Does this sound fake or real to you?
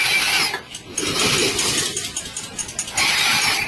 real